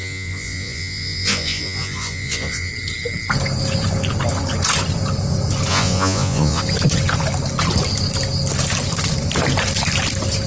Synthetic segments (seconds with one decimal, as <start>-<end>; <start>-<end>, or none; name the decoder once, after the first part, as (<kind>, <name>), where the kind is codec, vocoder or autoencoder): 0.0-2.7 (vocoder, Vocos); 5.7-6.6